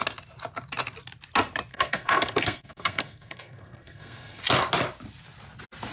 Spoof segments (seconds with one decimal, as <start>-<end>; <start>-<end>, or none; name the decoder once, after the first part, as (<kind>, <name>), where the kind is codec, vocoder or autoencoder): 1.7-4.4 (codec, SNAC)